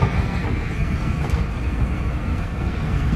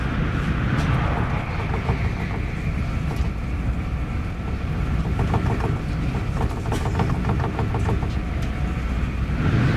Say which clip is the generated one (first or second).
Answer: first